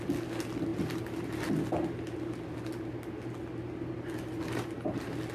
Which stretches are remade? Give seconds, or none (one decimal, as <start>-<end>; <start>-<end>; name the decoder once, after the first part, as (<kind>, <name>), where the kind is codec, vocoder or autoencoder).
none